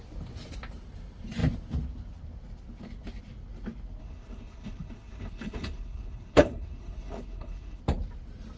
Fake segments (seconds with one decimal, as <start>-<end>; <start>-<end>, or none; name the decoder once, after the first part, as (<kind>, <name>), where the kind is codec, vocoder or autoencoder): 4.0-7.8 (codec, HILCodec)